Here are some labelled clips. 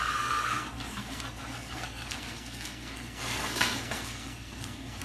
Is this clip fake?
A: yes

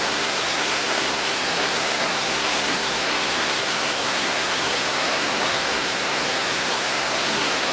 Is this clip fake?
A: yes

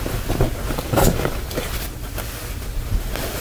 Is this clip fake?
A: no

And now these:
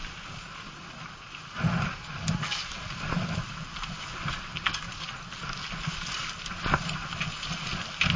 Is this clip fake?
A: no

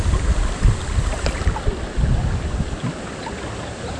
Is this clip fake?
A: no